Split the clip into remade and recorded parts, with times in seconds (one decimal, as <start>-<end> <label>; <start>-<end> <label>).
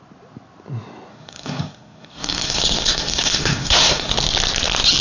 0.0-1.1 recorded; 1.1-4.1 remade; 4.1-5.0 recorded